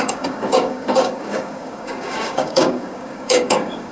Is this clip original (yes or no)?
no